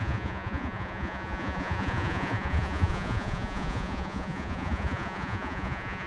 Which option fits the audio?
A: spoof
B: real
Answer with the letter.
A